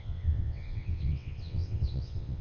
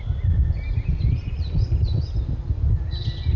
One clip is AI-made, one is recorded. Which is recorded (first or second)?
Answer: second